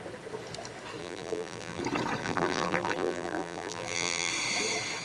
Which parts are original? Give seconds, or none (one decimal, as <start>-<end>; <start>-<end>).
0.0-1.0; 1.8-2.2; 4.3-5.0